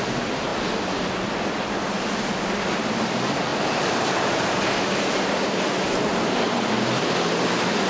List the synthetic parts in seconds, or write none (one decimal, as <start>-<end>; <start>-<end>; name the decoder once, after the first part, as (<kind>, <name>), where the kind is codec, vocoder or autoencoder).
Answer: 0.0-6.1 (vocoder, BigVGAN v2); 7.0-7.9